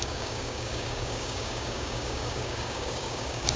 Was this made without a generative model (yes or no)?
no